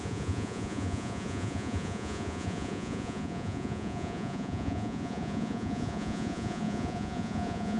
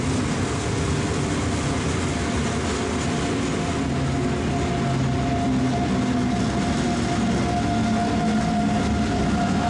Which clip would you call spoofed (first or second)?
first